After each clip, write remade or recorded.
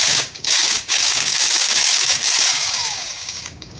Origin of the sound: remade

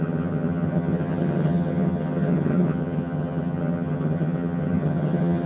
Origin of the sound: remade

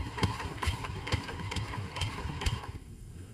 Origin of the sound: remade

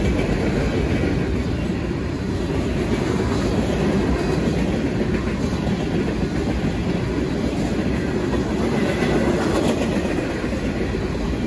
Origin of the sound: recorded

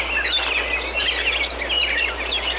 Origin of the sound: recorded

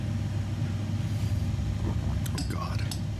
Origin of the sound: recorded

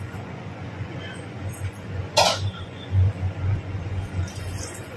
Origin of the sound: remade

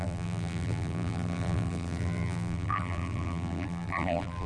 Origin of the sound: remade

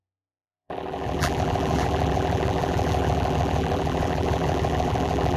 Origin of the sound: remade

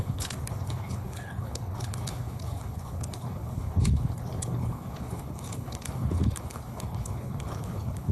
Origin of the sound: remade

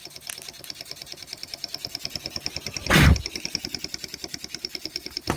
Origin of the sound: recorded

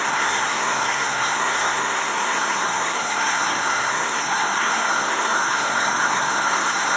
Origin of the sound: remade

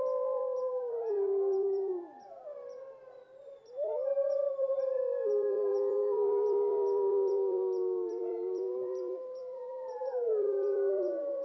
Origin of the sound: remade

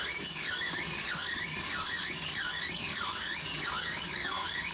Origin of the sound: remade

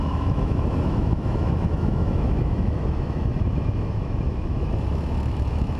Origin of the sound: remade